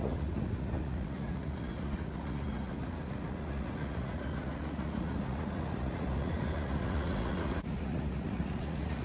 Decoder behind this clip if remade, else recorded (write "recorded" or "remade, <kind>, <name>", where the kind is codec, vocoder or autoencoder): remade, vocoder, Vocos